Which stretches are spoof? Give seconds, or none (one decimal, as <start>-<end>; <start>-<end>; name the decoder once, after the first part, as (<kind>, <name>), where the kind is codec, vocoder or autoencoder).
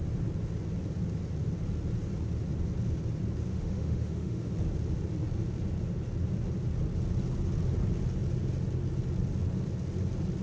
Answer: 3.5-4.5 (autoencoder, DAC-VAE)